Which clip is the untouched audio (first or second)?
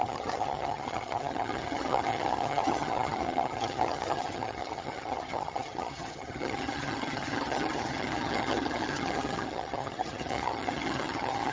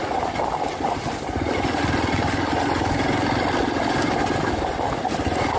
second